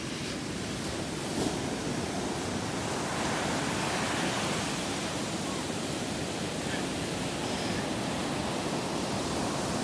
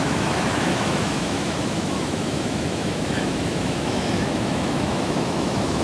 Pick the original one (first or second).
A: first